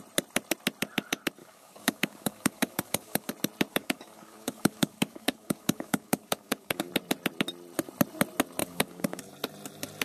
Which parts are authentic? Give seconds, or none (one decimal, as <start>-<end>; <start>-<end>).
0.0-1.4; 3.3-3.7; 6.9-8.6; 9.3-10.0